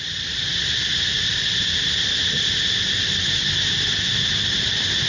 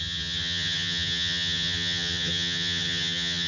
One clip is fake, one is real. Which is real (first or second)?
first